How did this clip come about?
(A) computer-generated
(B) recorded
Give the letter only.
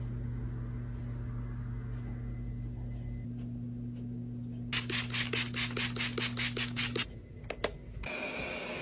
B